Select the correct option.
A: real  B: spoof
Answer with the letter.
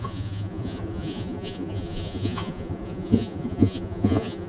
B